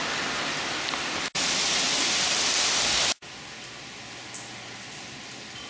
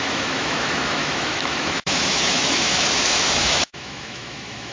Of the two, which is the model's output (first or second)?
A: second